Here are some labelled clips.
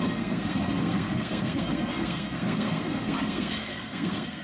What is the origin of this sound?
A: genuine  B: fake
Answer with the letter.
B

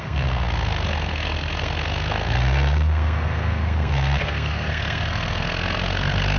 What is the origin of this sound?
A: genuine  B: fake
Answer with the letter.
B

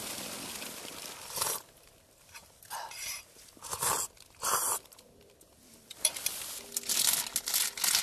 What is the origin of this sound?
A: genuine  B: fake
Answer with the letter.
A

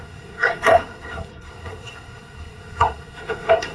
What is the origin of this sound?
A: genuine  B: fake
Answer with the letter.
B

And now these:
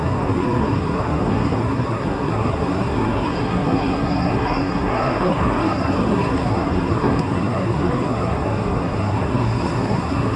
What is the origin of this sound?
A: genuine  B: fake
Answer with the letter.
B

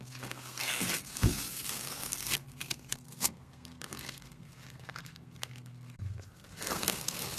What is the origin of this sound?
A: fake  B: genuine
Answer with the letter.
A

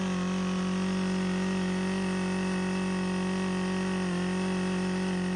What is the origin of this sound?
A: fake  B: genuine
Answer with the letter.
B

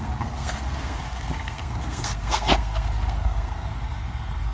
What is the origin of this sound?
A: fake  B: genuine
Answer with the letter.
A